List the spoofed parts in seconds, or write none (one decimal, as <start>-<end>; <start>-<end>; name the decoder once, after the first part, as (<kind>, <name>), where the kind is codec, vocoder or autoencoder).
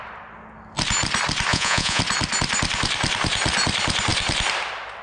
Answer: 1.5-2.0 (vocoder, Vocos)